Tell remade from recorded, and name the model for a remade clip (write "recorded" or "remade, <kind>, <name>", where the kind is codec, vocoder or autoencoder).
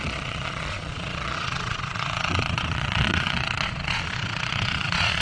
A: remade, vocoder, Vocos